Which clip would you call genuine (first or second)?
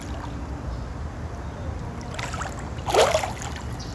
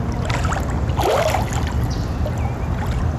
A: first